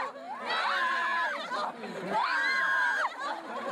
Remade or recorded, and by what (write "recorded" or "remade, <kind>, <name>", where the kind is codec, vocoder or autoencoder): recorded